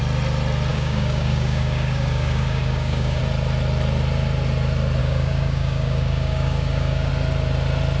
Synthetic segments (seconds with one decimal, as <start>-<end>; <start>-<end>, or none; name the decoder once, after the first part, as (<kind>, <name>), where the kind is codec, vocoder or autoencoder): 0.7-3.2 (codec, DAC); 5.0-7.1